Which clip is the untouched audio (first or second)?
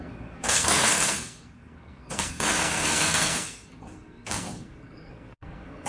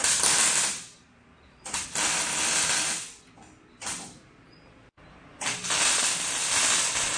second